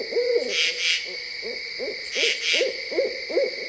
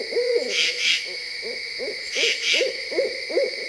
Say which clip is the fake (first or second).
second